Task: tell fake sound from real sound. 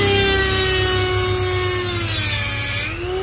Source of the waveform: real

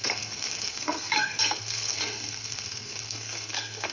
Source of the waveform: fake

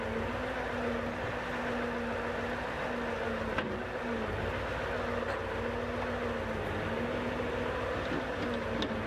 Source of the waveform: real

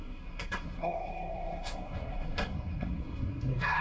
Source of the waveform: fake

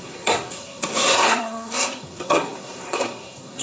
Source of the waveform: fake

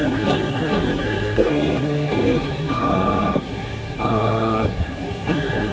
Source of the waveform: fake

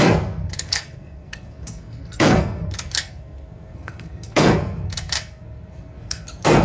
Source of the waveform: fake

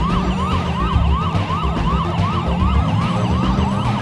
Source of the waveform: real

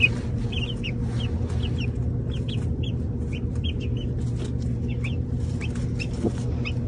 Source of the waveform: real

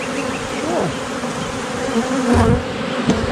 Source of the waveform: real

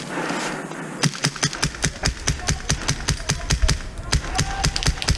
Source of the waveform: real